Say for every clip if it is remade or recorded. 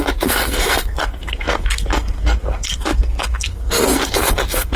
remade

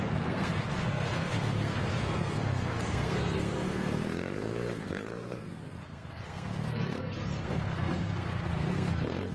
remade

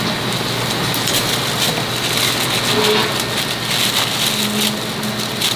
recorded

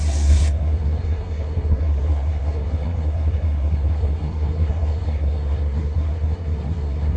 remade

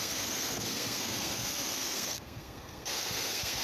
remade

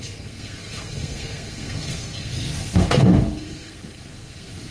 remade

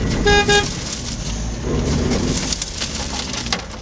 recorded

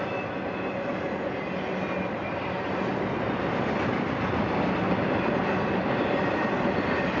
recorded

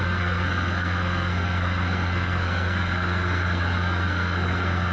remade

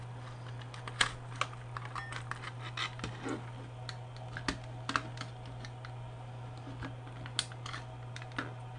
recorded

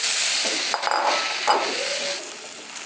recorded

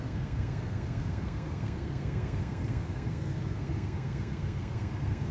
remade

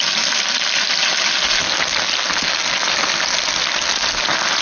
recorded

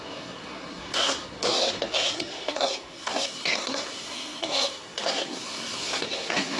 remade